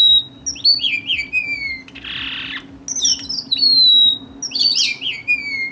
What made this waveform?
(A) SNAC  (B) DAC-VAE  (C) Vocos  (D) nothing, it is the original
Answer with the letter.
D